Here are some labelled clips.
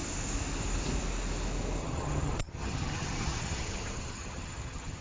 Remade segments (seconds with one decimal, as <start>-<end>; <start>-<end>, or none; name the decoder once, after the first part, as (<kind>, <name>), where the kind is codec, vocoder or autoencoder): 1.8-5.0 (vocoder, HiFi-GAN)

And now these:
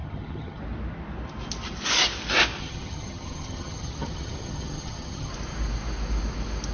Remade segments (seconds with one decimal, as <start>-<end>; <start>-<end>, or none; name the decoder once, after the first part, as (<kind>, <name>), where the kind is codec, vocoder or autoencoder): 0.0-0.6 (vocoder, HiFi-GAN); 2.6-5.3

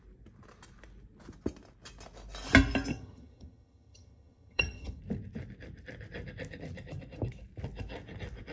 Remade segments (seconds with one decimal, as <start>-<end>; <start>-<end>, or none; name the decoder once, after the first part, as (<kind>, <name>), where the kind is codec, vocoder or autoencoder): 2.9-5.0 (vocoder, HiFi-GAN)

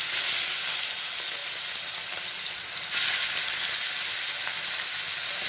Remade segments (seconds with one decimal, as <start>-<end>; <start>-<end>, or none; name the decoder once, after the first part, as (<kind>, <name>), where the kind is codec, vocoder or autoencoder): none

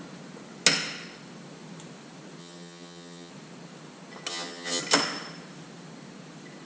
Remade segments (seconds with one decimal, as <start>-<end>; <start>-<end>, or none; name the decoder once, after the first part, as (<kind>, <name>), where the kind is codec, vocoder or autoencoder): 2.4-3.3 (vocoder, HiFi-GAN); 4.3-4.8

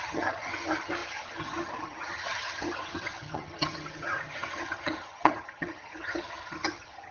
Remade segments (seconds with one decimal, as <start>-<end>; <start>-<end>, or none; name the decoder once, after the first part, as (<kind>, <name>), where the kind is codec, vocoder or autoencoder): 0.0-7.1 (vocoder, HiFi-GAN)

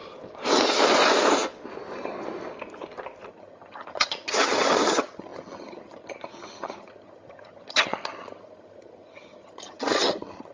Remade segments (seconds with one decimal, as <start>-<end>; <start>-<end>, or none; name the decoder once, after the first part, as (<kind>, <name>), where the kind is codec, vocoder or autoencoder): 3.3-10.5 (vocoder, HiFi-GAN)

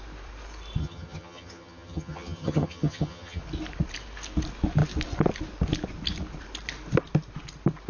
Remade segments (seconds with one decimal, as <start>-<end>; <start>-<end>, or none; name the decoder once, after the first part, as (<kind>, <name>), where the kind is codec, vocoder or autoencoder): 0.8-3.4 (vocoder, HiFi-GAN)